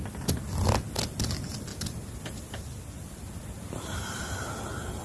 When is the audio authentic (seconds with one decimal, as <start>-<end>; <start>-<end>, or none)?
0.0-5.0